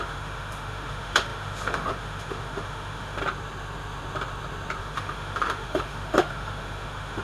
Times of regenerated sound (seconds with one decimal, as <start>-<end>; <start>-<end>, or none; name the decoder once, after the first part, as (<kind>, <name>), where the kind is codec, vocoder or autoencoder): 0.0-3.2 (autoencoder, DAC-VAE); 4.8-7.2